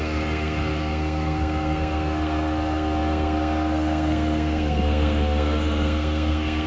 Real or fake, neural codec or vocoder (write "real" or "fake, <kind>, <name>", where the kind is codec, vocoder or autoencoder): fake, codec, SNAC